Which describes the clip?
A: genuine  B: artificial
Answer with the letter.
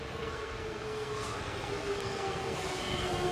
B